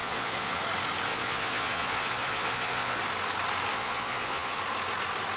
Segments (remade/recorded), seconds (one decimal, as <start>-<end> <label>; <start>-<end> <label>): 0.0-0.6 remade; 0.6-1.1 recorded; 1.1-3.0 remade; 3.0-3.7 recorded; 3.7-4.6 remade; 4.6-5.4 recorded

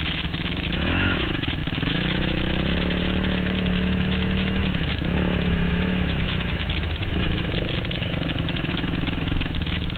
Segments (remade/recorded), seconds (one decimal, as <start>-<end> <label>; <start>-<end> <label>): 0.0-10.0 remade

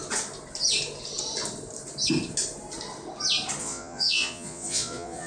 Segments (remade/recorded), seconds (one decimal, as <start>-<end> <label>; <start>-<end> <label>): 0.0-3.6 recorded; 3.6-5.3 remade

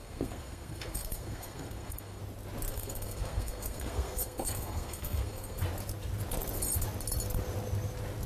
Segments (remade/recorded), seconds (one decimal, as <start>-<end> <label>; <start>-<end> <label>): 0.0-2.2 remade; 2.2-2.7 recorded; 2.7-5.6 remade; 5.6-8.3 recorded

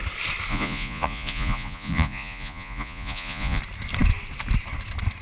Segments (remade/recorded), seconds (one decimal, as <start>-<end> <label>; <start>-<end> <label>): 0.0-0.5 recorded; 0.5-3.6 remade; 3.6-5.2 recorded

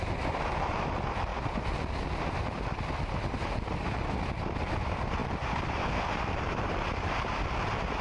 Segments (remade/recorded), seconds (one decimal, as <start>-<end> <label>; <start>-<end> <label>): 0.0-1.3 remade; 1.3-4.7 recorded; 4.7-8.0 remade

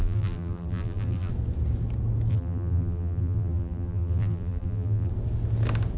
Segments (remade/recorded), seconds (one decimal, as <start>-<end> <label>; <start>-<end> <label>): 0.0-1.3 remade; 1.3-2.3 recorded; 2.3-5.1 remade; 5.1-6.0 recorded